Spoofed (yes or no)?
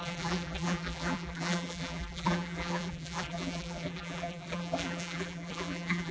yes